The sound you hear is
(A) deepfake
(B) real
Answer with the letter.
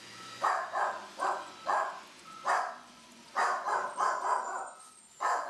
A